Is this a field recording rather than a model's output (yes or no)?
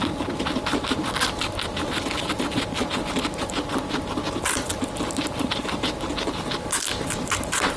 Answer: yes